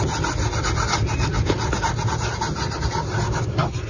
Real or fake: real